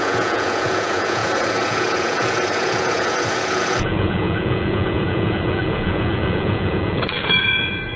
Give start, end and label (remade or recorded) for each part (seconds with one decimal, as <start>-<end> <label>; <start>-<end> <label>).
0.0-8.0 remade